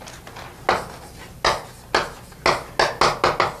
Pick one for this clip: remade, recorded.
recorded